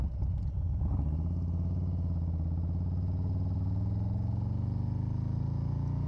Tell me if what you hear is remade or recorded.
remade